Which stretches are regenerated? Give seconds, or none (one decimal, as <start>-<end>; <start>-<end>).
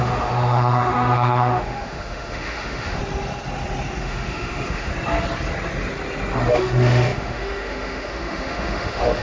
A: 0.0-3.0; 4.0-4.9; 6.5-9.2